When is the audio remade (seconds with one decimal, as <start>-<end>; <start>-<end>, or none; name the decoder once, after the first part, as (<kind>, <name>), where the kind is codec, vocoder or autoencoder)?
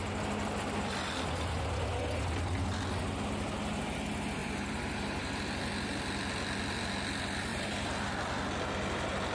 4.4-5.4 (vocoder, BigVGAN v2); 7.5-8.1